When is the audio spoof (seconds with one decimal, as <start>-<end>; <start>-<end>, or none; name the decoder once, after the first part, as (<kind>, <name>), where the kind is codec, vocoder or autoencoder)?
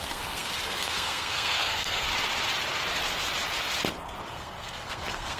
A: 0.0-2.1 (codec, SNAC); 4.3-5.4